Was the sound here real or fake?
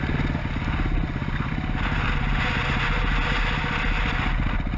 real